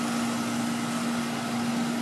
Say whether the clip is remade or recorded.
recorded